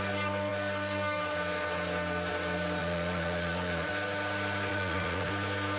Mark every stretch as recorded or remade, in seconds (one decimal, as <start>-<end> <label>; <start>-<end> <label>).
0.0-2.8 recorded; 2.8-3.9 remade; 3.9-4.7 recorded; 4.7-5.3 remade; 5.3-5.8 recorded